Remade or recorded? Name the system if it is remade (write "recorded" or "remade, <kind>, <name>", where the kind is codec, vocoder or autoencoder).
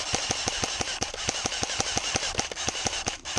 recorded